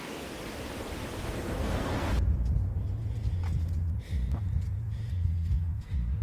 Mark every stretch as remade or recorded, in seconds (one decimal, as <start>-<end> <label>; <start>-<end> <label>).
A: 0.0-0.4 remade; 0.4-1.3 recorded; 1.3-2.1 remade; 2.1-5.1 recorded; 5.1-6.2 remade